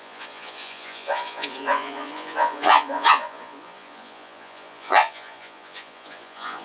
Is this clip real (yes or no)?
no